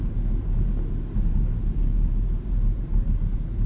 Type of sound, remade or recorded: recorded